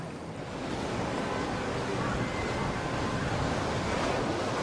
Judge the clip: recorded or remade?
recorded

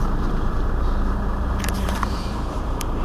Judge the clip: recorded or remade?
remade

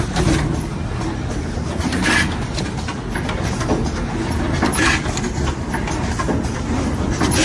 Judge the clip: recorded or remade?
recorded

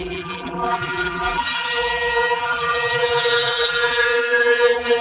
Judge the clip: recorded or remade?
remade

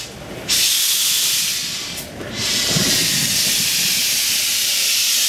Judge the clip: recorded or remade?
recorded